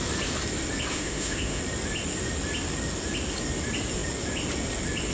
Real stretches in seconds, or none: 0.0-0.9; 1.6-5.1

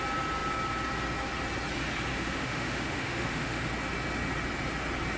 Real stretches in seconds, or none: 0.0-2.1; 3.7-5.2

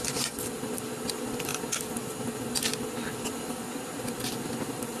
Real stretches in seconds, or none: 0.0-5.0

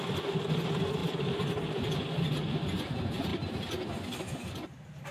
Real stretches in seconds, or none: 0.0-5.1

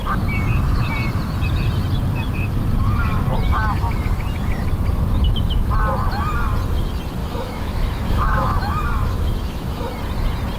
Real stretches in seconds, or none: 0.0-7.2; 9.9-10.6

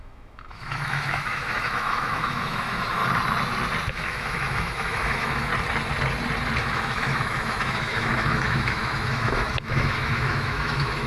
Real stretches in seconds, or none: 3.0-3.9; 5.5-6.6